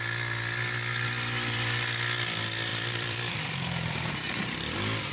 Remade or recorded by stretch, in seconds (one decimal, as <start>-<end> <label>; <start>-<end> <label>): 0.0-2.7 recorded; 2.7-4.1 remade; 4.1-5.1 recorded